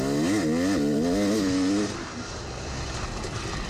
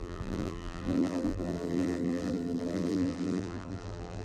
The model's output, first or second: second